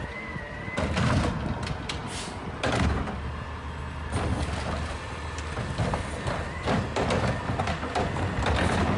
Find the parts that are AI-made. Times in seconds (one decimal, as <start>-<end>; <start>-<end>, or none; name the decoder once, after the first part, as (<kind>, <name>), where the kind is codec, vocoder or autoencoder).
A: none